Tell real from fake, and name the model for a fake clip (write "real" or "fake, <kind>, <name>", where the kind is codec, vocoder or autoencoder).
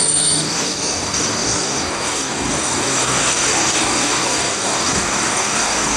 fake, codec, DAC